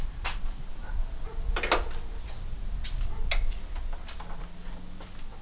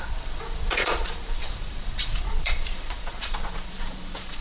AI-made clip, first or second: second